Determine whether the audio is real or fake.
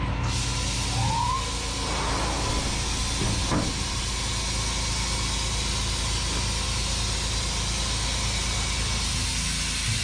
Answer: real